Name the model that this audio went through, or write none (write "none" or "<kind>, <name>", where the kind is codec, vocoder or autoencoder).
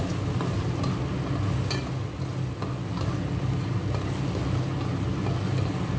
none